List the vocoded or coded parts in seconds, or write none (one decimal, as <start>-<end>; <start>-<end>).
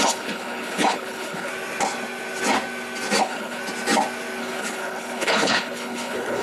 0.0-1.5; 3.2-3.6; 4.4-6.4